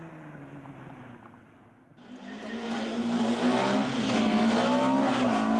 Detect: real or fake real